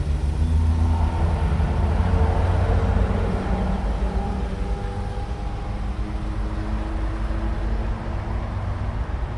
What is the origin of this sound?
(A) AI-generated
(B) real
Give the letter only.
B